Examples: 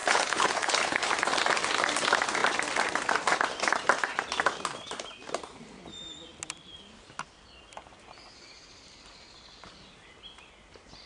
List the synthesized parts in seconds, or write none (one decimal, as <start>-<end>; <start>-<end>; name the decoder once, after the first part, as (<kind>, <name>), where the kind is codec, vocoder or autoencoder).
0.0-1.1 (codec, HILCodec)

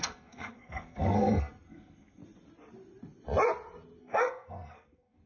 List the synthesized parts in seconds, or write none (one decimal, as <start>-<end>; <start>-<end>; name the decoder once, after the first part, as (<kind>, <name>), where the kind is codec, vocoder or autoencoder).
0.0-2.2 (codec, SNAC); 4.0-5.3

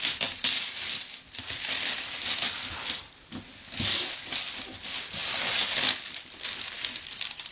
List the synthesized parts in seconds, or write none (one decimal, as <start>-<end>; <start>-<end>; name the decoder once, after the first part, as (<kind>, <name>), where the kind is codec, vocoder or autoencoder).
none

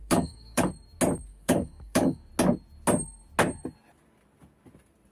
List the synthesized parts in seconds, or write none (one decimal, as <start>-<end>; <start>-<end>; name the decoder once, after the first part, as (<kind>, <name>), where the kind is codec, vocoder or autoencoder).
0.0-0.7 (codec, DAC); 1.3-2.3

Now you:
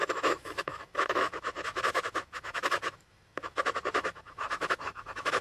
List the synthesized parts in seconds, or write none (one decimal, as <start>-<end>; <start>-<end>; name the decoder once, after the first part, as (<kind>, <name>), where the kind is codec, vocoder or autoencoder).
0.0-5.4 (autoencoder, DAC-VAE)

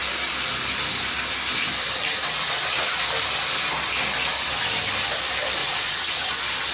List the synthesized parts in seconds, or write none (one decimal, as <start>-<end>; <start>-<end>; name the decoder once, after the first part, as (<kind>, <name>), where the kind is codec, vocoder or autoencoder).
5.6-6.3 (vocoder, Vocos)